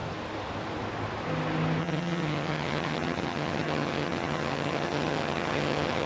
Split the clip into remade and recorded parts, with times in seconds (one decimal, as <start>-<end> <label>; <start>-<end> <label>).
0.0-1.8 recorded; 1.8-6.1 remade